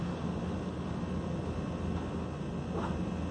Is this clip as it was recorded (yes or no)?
yes